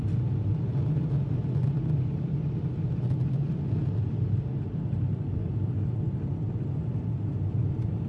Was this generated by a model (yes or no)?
no